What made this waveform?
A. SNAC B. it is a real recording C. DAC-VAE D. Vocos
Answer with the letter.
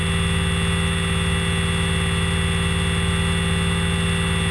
B